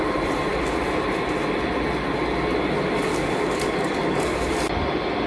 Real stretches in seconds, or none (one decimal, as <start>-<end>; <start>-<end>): 0.0-3.1; 4.5-5.3